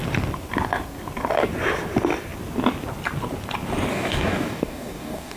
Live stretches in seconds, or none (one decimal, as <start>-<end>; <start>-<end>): 0.0-3.9